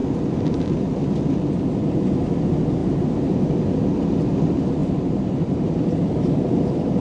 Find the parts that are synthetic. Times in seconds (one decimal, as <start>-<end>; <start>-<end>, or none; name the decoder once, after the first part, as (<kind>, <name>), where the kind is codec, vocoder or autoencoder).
2.8-3.6 (vocoder, BigVGAN v2); 4.8-6.3